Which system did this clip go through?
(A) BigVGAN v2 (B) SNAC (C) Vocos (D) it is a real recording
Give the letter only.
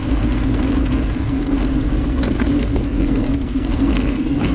B